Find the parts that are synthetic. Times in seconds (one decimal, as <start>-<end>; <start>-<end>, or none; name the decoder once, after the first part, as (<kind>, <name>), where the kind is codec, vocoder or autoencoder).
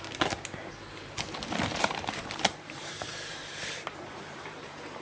1.7-5.0 (vocoder, BigVGAN v2)